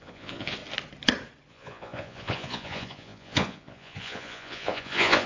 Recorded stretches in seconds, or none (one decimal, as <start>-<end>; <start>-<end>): 0.6-1.5

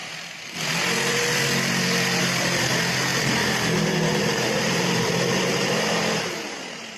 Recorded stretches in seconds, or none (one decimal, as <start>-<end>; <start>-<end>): 0.0-2.2

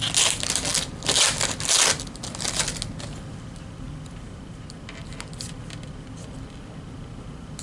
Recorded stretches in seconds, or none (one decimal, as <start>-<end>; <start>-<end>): 0.0-7.6